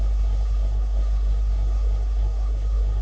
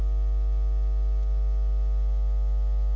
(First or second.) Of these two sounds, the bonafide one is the second